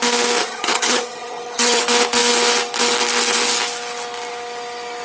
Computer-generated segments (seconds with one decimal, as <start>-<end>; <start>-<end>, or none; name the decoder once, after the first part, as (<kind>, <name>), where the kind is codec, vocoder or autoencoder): 0.4-1.8 (vocoder, HiFi-GAN)